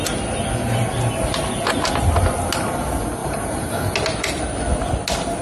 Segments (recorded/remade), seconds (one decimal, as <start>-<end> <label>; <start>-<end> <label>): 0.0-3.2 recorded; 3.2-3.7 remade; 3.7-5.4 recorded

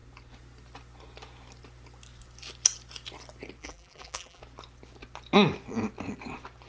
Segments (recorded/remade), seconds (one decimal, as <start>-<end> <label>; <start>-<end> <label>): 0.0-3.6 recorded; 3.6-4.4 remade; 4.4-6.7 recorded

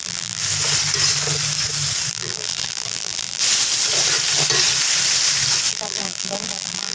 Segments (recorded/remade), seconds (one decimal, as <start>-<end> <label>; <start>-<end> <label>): 0.0-0.4 remade; 0.4-2.1 recorded; 2.1-3.4 remade; 3.4-5.7 recorded; 5.7-6.9 remade

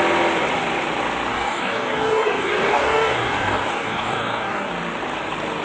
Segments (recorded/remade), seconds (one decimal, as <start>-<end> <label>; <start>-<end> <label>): 0.0-1.3 recorded; 1.3-4.7 remade; 4.7-5.6 recorded

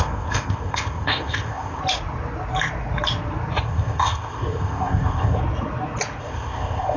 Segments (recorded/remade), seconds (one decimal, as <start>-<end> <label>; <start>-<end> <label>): 0.0-1.8 remade; 1.8-3.6 recorded; 3.6-5.4 remade; 5.4-6.2 recorded; 6.2-7.0 remade

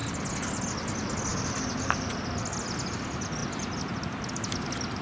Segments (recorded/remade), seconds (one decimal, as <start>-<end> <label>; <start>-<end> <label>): 0.0-5.0 recorded